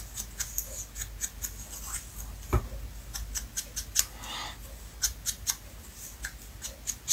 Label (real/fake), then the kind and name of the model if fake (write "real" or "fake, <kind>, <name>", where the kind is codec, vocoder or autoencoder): real